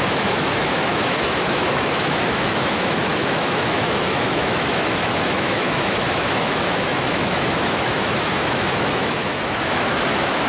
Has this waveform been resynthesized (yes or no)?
yes